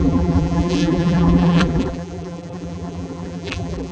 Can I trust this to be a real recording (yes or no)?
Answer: no